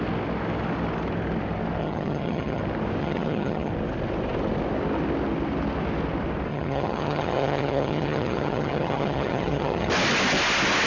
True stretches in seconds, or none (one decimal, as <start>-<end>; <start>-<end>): 0.0-1.8; 2.6-3.0; 3.7-6.5; 9.9-10.9